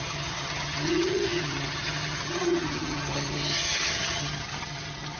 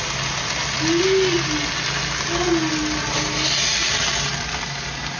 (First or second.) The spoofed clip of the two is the first